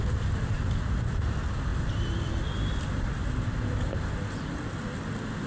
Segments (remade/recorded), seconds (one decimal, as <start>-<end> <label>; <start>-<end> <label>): 0.0-5.5 recorded